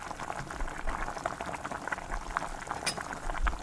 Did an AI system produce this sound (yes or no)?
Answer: no